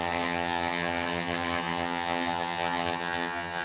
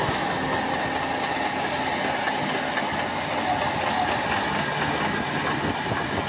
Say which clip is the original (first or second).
second